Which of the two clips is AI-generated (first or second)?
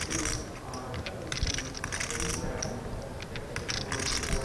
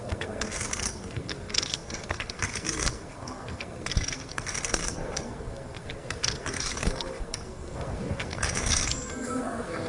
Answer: second